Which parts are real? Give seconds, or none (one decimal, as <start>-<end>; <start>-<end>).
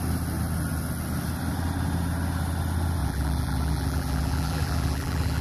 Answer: 0.0-3.0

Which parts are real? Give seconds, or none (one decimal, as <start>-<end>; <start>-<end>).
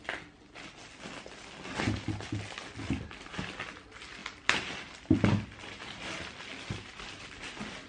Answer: 0.0-7.9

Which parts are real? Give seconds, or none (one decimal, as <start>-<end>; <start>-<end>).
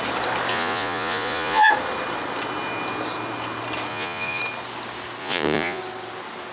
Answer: 0.0-0.5; 1.7-3.9; 4.4-5.2; 5.8-6.5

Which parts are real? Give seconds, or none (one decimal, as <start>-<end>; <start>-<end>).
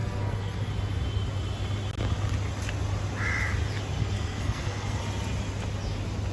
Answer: 0.7-4.0; 5.0-6.3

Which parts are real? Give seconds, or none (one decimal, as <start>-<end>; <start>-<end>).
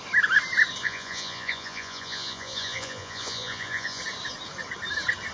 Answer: 0.0-0.8; 4.0-5.3